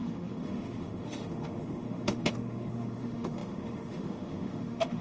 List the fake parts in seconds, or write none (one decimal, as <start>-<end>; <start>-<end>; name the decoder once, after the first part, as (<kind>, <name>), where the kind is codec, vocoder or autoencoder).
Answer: 0.0-5.0 (autoencoder, DAC-VAE)